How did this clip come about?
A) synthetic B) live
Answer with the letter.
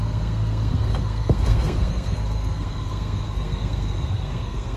A